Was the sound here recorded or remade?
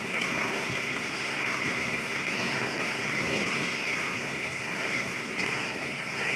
remade